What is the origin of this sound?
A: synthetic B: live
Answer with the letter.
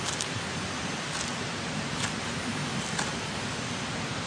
B